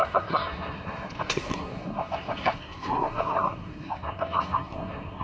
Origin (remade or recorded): remade